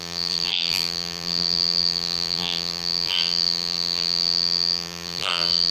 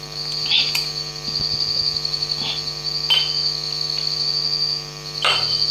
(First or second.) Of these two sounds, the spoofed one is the first